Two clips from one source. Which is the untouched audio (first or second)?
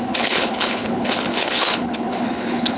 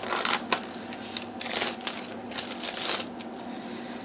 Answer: second